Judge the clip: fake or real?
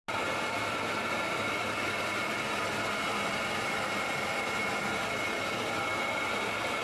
real